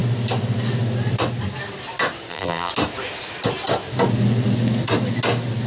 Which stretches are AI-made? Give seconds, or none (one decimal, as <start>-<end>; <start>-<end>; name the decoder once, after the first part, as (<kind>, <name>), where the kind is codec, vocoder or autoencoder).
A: 2.3-2.7 (vocoder, BigVGAN v2)